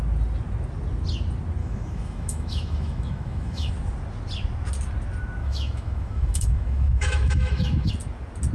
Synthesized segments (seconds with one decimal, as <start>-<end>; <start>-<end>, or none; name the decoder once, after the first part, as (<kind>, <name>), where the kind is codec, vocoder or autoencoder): 1.6-3.7 (autoencoder, DAC-VAE); 5.4-7.9